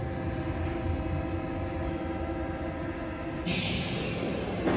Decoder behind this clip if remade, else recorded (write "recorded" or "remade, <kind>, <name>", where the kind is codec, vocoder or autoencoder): recorded